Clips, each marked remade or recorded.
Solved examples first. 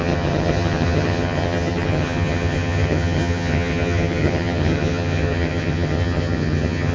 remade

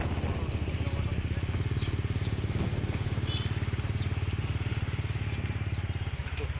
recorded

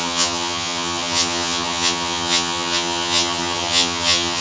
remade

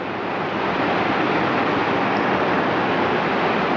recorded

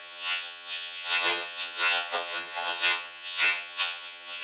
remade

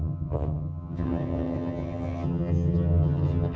remade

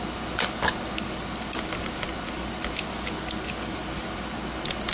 recorded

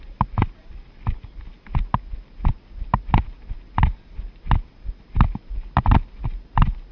recorded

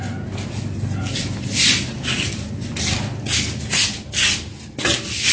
recorded